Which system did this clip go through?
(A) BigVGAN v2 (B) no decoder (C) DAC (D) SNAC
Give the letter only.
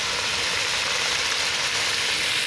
B